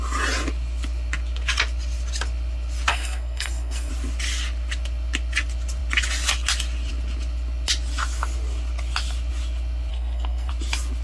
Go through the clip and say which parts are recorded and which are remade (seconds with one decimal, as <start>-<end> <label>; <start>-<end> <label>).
0.0-2.9 recorded; 2.9-3.9 remade; 3.9-9.9 recorded; 9.9-10.5 remade; 10.5-11.0 recorded

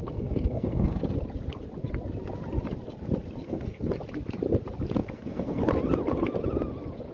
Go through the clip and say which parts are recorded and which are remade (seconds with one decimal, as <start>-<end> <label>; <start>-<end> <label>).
0.0-1.0 remade; 1.0-3.4 recorded; 3.4-3.9 remade; 3.9-5.0 recorded; 5.0-5.6 remade; 5.6-7.1 recorded

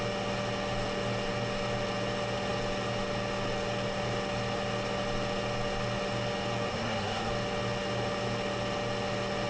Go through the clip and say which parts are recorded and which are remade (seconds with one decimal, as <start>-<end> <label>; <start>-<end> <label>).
0.0-6.7 recorded; 6.7-7.3 remade; 7.3-9.5 recorded